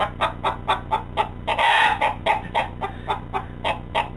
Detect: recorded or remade recorded